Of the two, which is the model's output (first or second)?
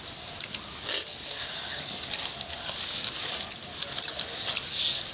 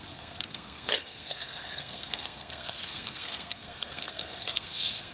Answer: second